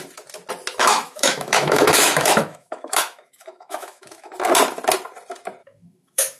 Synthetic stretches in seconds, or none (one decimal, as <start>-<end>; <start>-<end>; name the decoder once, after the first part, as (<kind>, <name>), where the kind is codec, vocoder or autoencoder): 0.8-4.3 (autoencoder, DAC-VAE); 5.6-6.4